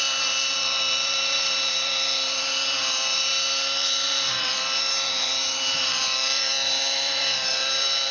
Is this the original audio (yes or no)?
no